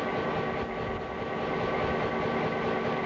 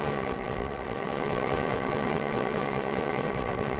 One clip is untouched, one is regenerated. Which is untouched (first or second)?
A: first